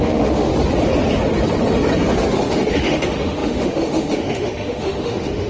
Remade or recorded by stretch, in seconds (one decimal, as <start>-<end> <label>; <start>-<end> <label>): 0.0-0.5 remade; 0.5-2.3 recorded; 2.3-5.5 remade